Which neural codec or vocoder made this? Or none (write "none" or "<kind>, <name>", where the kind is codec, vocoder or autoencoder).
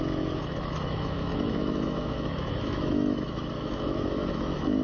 autoencoder, DAC-VAE